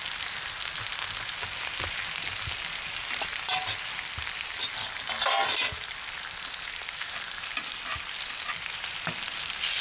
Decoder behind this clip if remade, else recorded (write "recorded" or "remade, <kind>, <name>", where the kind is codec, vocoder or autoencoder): recorded